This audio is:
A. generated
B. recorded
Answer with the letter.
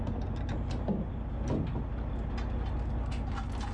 B